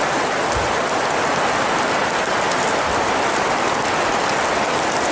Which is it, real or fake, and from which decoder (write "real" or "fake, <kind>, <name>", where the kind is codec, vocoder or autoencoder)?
real